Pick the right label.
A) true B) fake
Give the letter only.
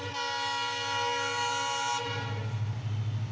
A